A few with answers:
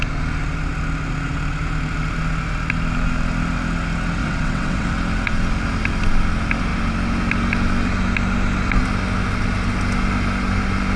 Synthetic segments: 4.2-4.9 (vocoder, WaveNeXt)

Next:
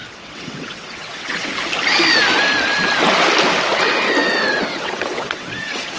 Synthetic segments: 0.0-1.5 (vocoder, WaveNeXt); 4.5-6.0